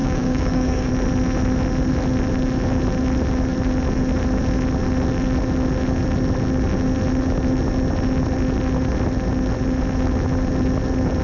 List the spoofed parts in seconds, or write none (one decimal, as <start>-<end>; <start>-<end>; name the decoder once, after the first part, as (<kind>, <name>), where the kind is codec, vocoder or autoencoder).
0.0-0.9 (codec, DAC)